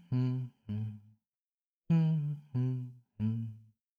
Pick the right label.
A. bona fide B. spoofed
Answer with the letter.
B